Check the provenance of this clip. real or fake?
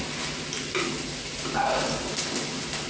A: real